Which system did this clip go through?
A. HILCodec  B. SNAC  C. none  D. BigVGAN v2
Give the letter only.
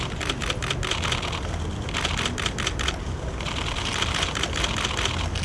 C